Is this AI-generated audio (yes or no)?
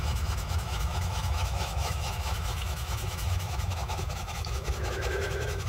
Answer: yes